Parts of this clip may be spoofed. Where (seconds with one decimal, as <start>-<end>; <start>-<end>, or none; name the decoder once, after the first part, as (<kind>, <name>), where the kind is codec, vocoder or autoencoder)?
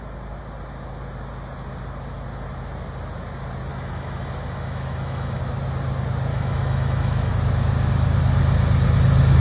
3.7-5.4 (autoencoder, DAC-VAE); 6.3-7.3